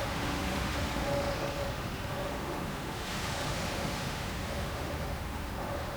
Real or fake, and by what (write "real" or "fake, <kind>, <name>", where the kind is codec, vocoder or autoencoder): fake, autoencoder, DAC-VAE